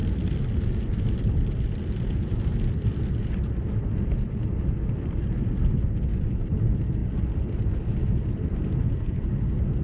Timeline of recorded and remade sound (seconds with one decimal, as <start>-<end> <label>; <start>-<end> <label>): 0.0-9.8 recorded

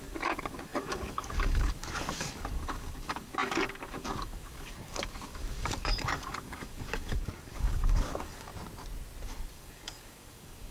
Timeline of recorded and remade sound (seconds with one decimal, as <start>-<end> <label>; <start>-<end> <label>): 0.0-8.5 remade; 8.5-9.5 recorded; 9.5-10.7 remade

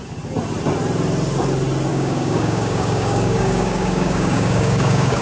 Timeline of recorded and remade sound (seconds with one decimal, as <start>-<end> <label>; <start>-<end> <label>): 0.0-1.9 recorded; 1.9-5.2 remade

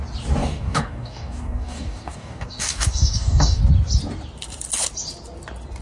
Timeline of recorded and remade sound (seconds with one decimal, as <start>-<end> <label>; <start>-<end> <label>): 0.0-0.4 recorded; 0.4-3.6 remade; 3.6-5.8 recorded

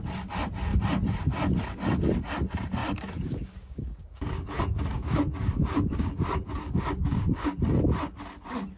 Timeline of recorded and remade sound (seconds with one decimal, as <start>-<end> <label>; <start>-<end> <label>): 0.0-2.8 recorded; 2.8-7.8 remade; 7.8-8.8 recorded

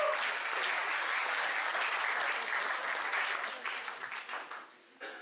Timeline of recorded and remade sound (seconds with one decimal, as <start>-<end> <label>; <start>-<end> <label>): 0.0-0.8 recorded; 0.8-1.7 remade; 1.7-5.2 recorded

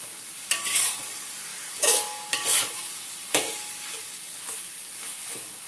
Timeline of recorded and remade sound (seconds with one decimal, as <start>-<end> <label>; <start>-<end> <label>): 0.0-5.7 remade

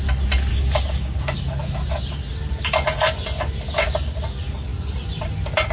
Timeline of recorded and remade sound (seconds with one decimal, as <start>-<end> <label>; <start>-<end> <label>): 0.0-0.5 recorded; 0.5-1.4 remade; 1.4-5.7 recorded